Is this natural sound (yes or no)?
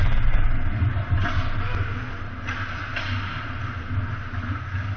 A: yes